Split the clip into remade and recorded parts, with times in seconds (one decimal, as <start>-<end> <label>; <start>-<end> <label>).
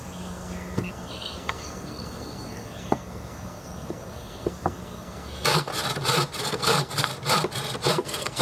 0.0-5.7 remade; 5.7-6.4 recorded; 6.4-7.1 remade; 7.1-7.9 recorded; 7.9-8.4 remade